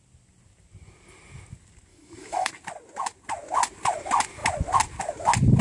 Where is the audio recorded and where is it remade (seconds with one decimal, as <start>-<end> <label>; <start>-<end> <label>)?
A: 0.0-1.9 recorded; 1.9-2.5 remade; 2.5-5.6 recorded